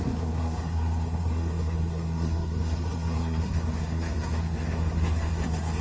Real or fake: fake